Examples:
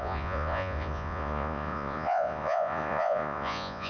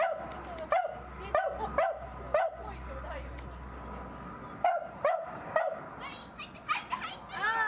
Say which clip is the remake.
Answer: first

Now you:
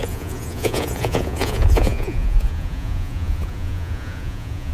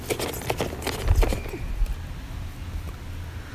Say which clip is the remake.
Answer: first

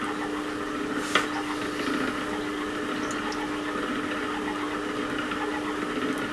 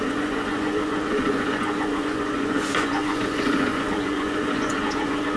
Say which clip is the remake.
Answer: second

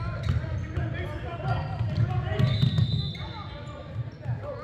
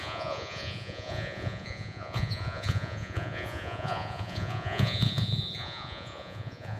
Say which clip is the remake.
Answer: second